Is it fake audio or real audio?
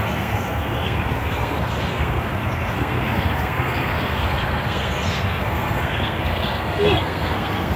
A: fake